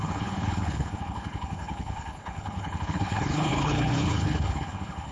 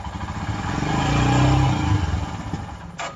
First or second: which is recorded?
second